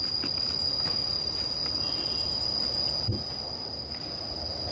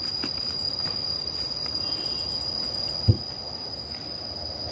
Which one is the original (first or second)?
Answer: first